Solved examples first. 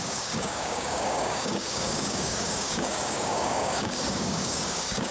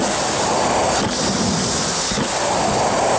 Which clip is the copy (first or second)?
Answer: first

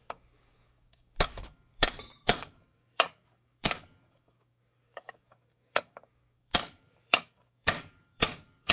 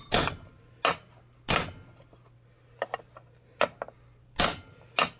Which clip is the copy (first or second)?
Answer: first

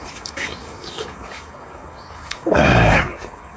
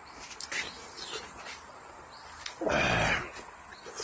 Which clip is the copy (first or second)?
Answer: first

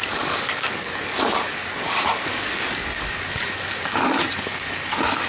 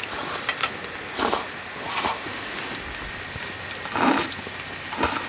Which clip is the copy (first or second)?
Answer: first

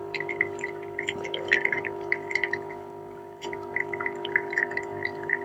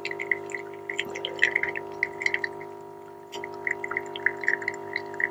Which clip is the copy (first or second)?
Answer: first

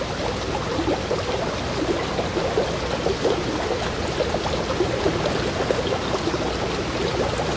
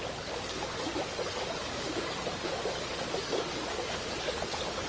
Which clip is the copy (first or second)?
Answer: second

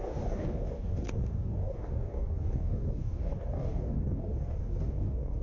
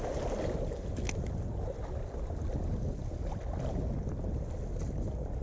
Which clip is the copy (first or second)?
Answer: first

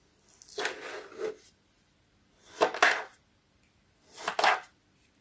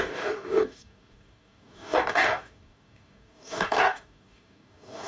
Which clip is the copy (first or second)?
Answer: second